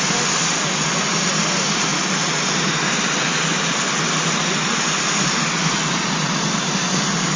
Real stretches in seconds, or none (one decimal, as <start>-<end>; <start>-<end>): 0.0-7.4